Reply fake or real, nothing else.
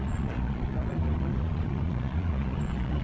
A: fake